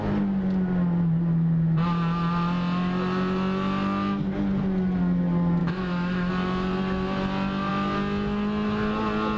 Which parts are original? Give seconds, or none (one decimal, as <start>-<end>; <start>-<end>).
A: 0.0-5.6; 6.3-9.4